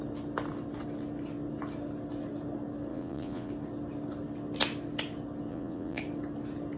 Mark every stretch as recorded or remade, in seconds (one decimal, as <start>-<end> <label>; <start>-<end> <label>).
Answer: 0.0-2.9 recorded; 2.9-3.5 remade; 3.5-5.5 recorded; 5.5-6.0 remade; 6.0-6.8 recorded